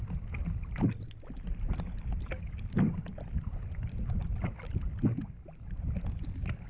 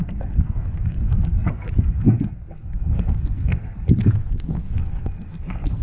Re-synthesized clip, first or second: second